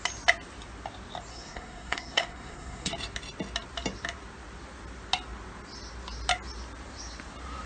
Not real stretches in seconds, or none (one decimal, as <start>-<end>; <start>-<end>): 1.3-2.9